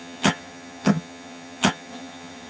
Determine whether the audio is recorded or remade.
remade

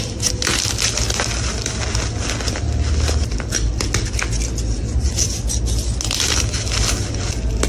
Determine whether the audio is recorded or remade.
recorded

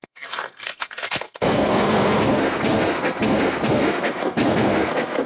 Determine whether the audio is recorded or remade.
remade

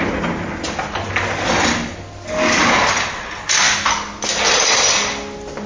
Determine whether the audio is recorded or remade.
recorded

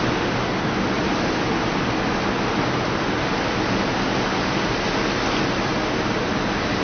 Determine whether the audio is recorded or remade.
recorded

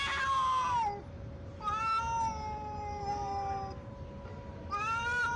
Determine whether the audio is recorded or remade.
remade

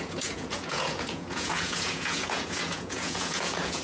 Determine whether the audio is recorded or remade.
remade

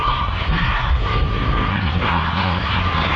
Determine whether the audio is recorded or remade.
remade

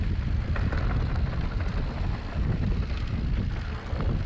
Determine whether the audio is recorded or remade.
recorded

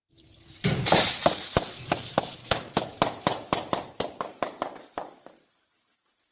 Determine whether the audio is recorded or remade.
remade